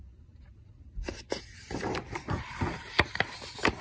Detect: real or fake real